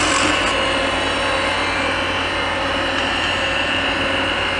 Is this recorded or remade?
recorded